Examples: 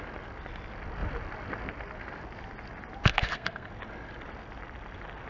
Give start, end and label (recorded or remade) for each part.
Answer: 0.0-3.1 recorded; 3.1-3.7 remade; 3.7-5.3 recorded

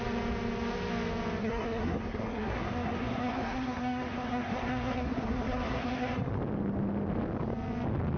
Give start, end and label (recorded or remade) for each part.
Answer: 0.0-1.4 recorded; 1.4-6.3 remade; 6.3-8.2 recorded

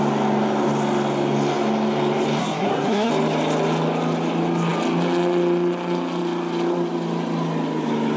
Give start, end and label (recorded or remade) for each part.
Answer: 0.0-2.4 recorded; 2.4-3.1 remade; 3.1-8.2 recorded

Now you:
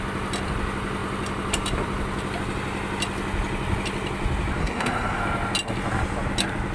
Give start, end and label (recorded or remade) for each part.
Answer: 0.0-4.6 recorded; 4.6-5.2 remade; 5.2-6.7 recorded

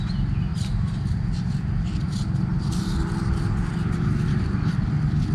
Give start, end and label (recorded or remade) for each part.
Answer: 0.0-5.3 recorded

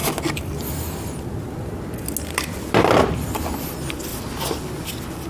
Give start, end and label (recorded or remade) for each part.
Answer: 0.0-5.3 recorded

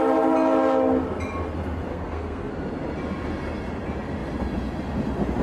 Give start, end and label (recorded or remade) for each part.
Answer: 0.0-1.9 recorded; 1.9-2.5 remade; 2.5-5.4 recorded